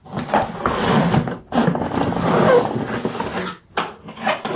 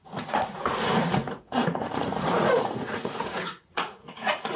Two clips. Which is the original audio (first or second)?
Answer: first